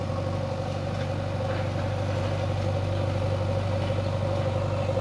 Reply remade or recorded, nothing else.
recorded